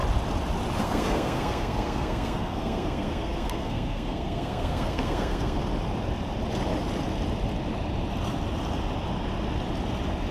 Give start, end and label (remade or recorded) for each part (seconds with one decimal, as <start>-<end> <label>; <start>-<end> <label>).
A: 0.0-0.8 recorded; 0.8-5.6 remade; 5.6-10.3 recorded